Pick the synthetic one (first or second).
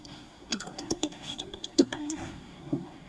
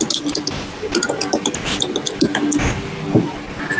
first